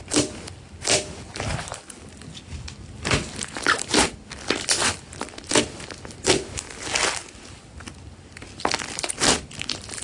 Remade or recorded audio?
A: recorded